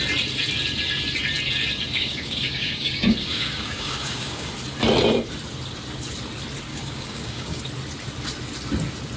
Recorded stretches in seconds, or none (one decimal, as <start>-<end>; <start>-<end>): 0.0-1.9; 4.5-6.7; 7.6-9.2